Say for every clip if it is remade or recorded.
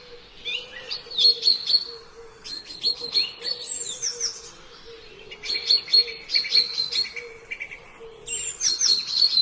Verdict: recorded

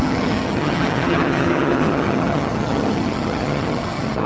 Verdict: remade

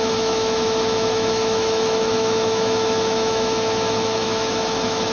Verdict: remade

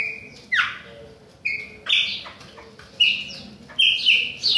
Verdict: recorded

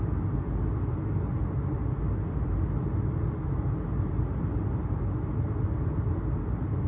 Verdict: recorded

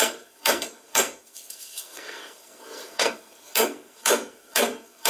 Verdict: remade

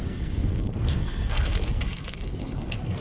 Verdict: remade